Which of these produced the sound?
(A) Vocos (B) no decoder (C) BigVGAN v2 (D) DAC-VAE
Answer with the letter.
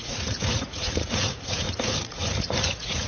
A